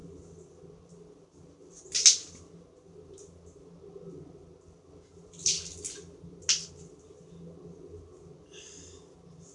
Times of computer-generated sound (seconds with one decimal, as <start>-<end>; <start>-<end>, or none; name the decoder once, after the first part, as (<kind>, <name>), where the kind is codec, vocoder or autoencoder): none